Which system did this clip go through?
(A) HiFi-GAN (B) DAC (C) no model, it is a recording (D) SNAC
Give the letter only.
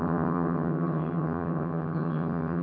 A